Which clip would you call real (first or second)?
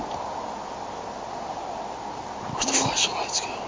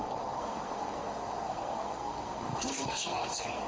first